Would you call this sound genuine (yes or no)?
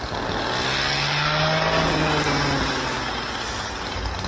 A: yes